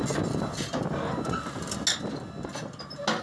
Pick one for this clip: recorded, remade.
recorded